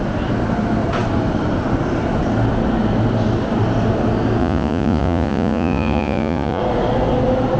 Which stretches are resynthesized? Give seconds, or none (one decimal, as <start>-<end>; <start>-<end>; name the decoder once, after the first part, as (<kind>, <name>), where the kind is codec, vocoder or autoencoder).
4.4-6.6 (vocoder, Vocos)